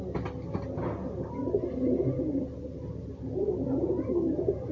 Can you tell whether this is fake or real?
real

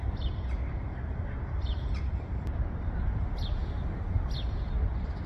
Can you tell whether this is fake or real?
real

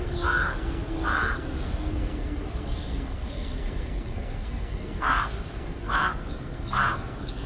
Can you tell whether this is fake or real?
fake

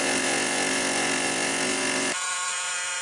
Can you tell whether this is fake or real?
fake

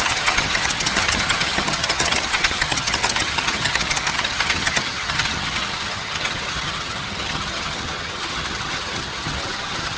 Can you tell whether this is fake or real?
fake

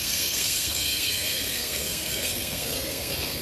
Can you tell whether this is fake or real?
fake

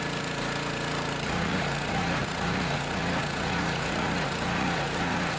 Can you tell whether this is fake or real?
fake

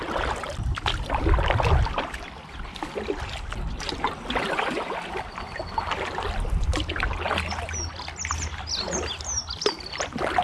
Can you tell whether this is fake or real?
real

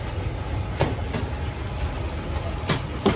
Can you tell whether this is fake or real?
real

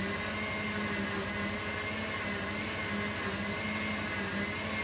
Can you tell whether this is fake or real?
real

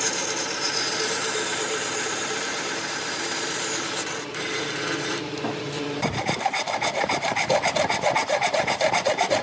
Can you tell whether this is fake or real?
fake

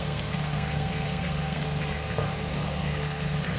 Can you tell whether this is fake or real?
fake